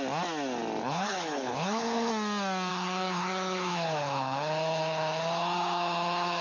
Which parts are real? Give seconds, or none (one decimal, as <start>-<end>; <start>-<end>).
0.0-0.8; 2.1-2.7